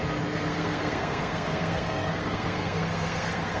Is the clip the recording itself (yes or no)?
no